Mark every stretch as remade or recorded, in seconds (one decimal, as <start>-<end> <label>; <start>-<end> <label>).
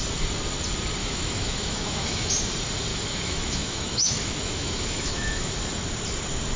0.0-1.0 recorded; 1.0-2.3 remade; 2.3-2.9 recorded; 2.9-5.5 remade; 5.5-6.6 recorded